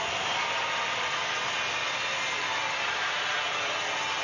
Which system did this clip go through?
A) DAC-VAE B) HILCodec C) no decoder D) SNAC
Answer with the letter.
C